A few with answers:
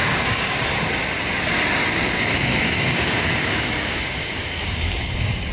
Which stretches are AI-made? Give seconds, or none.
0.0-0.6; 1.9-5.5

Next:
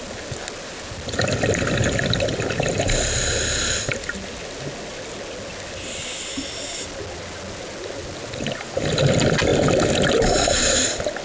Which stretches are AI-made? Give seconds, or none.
none